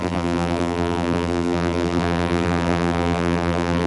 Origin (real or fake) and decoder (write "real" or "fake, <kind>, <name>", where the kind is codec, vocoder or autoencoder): fake, vocoder, BigVGAN v2